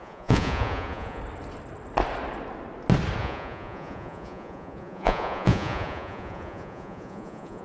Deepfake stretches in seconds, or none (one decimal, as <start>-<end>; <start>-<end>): 0.0-1.2; 3.2-7.6